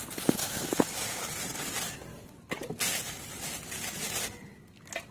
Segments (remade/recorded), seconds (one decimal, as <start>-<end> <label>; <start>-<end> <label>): 0.0-0.4 recorded; 0.4-1.2 remade; 1.2-5.1 recorded

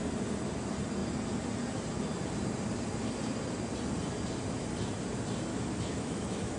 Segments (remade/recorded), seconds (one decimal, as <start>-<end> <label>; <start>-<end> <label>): 0.0-5.5 recorded; 5.5-6.6 remade

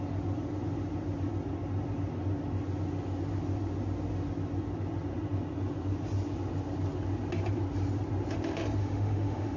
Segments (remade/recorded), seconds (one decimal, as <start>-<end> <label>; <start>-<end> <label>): 0.0-8.8 recorded; 8.8-9.6 remade

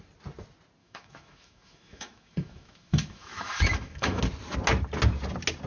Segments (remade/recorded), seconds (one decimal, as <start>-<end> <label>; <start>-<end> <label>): 0.0-0.8 recorded; 0.8-4.2 remade; 4.2-5.7 recorded

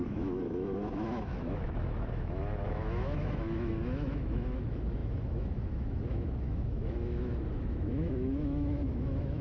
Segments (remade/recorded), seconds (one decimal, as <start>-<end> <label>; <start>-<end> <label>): 0.0-9.4 remade

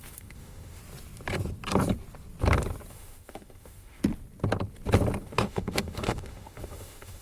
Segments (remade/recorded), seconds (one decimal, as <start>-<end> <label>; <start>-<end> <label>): 0.0-0.8 remade; 0.8-2.9 recorded; 2.9-4.0 remade; 4.0-5.2 recorded; 5.2-7.2 remade

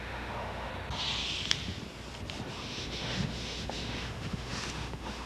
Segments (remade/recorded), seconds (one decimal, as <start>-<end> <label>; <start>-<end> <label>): 0.0-0.7 remade; 0.7-2.5 recorded; 2.5-5.3 remade

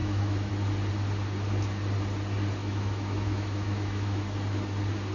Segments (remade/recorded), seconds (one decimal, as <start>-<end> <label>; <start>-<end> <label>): 0.0-0.5 remade; 0.5-2.6 recorded; 2.6-4.2 remade; 4.2-5.1 recorded